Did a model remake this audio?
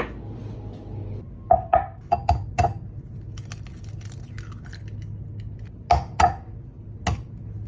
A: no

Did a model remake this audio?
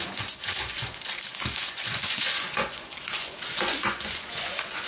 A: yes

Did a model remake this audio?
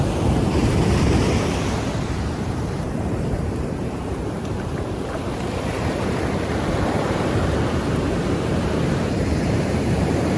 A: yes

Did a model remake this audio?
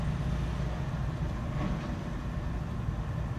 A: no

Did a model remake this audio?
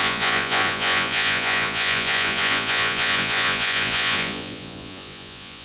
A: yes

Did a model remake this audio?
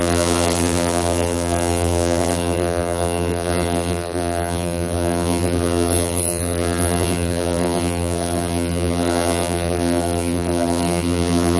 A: yes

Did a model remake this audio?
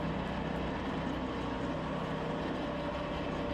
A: no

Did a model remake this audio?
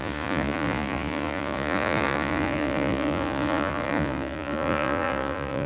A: yes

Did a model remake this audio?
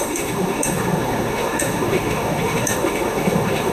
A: yes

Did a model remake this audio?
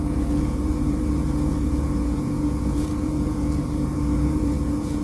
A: yes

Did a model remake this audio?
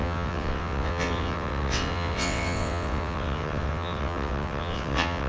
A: yes